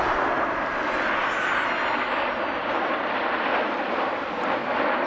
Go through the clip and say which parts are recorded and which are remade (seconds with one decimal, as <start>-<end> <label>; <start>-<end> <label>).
0.0-5.1 recorded